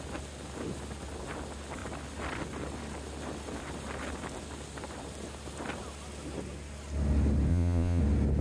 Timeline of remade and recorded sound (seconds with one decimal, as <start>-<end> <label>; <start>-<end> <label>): 0.0-7.5 recorded; 7.5-8.0 remade; 8.0-8.4 recorded